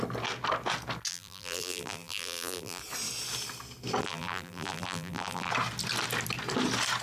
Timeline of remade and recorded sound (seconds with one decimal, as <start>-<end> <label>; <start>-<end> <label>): 0.0-1.1 recorded; 1.1-2.8 remade; 2.8-4.0 recorded; 4.0-5.5 remade; 5.5-7.0 recorded